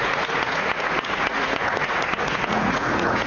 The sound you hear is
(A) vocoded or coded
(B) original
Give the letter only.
A